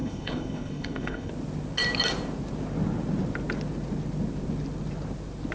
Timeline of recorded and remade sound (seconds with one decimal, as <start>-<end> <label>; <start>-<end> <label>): 0.0-1.3 remade; 1.3-5.5 recorded

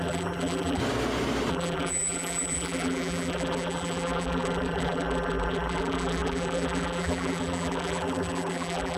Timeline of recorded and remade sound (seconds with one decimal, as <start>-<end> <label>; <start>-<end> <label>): 0.0-0.8 remade; 0.8-1.5 recorded; 1.5-9.0 remade

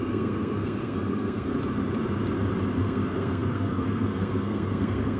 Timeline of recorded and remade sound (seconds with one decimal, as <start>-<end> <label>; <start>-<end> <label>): 0.0-1.5 remade; 1.5-2.8 recorded; 2.8-5.2 remade

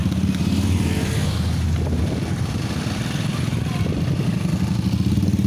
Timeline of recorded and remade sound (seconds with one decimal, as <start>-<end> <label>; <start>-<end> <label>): 0.0-5.5 recorded

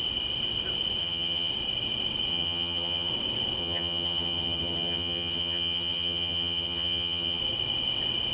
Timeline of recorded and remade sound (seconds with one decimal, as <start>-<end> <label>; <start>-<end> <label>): 0.0-1.0 recorded; 1.0-1.5 remade; 1.5-2.3 recorded; 2.3-3.1 remade; 3.1-3.6 recorded; 3.6-7.4 remade; 7.4-8.3 recorded

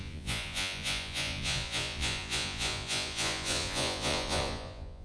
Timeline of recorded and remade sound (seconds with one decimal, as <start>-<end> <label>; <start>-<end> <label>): 0.0-5.0 remade

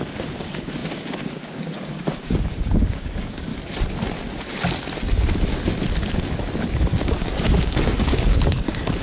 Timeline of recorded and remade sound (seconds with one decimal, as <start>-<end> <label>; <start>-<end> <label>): 0.0-3.5 remade; 3.5-6.7 recorded; 6.7-9.0 remade

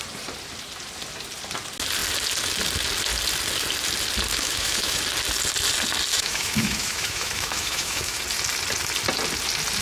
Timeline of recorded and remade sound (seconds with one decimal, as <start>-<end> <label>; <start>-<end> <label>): 0.0-4.3 recorded; 4.3-5.0 remade; 5.0-6.1 recorded; 6.1-8.2 remade; 8.2-9.8 recorded